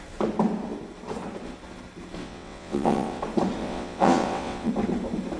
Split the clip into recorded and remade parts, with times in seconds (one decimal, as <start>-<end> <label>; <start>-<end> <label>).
0.0-2.2 recorded; 2.2-3.2 remade; 3.2-3.6 recorded; 3.6-4.7 remade; 4.7-5.4 recorded